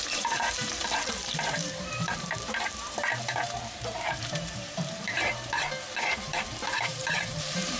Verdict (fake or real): fake